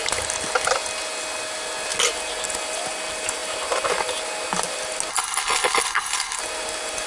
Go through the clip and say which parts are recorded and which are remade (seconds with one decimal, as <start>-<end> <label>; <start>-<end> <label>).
0.0-5.1 recorded; 5.1-6.4 remade; 6.4-7.1 recorded